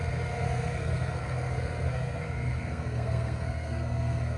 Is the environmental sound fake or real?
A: fake